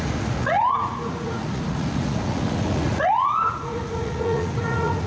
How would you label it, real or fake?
fake